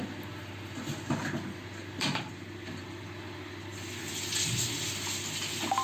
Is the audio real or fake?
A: real